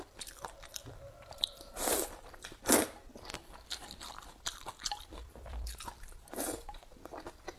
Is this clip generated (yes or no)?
yes